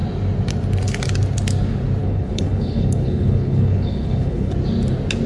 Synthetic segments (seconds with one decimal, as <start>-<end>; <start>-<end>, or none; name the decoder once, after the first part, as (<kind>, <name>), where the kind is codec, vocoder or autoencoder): 2.0-4.5 (codec, HILCodec)